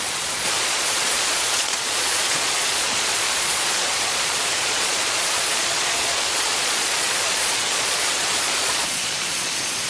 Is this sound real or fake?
fake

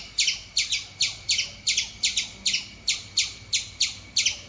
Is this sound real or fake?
real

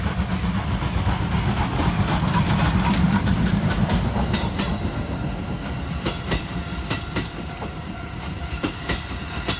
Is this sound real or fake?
real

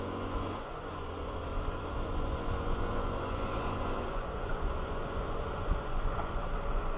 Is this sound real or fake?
fake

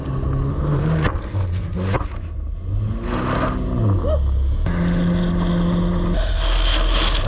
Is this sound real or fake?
real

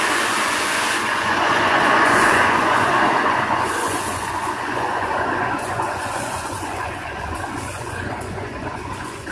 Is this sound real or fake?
fake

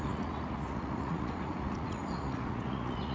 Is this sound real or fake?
fake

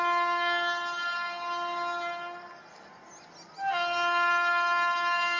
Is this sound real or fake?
real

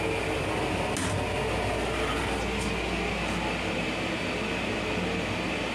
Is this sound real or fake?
real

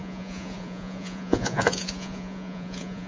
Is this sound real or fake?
fake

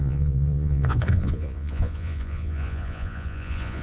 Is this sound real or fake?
fake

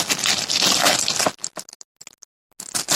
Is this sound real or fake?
real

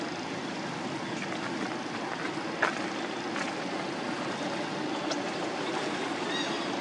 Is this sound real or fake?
real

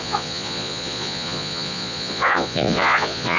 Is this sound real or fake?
fake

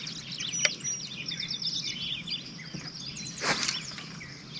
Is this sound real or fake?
real